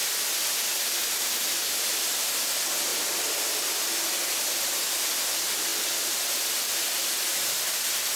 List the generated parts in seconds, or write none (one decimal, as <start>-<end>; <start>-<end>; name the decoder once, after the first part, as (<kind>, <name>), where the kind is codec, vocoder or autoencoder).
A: none